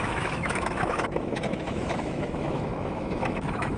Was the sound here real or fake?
fake